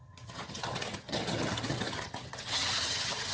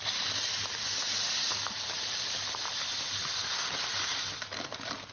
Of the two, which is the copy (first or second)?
first